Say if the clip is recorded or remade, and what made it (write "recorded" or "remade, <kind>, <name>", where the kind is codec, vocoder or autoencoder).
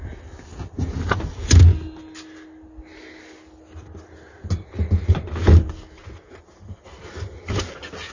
recorded